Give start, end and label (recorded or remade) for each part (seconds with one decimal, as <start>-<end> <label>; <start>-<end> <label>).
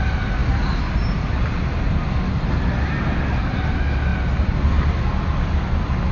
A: 0.0-6.1 recorded